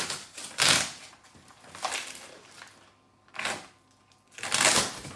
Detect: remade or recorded recorded